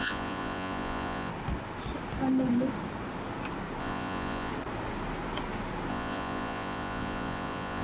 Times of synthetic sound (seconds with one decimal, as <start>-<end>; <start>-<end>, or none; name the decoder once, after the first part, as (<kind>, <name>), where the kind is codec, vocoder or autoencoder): 0.0-1.3 (vocoder, Vocos); 3.8-4.5; 5.9-7.8